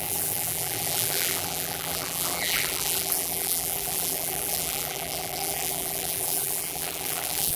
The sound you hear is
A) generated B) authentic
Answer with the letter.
A